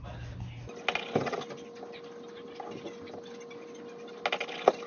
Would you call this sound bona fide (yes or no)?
yes